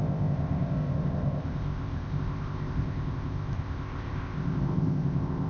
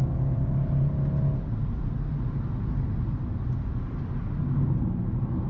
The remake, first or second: first